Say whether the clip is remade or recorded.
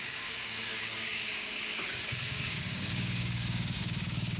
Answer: remade